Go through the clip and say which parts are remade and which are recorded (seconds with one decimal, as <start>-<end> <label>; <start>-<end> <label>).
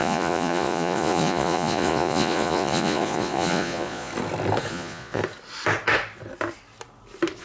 0.0-4.1 remade; 4.1-4.7 recorded; 4.7-5.2 remade; 5.2-7.4 recorded